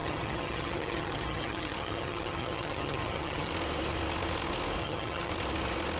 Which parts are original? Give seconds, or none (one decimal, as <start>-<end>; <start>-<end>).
3.5-4.8; 5.3-6.0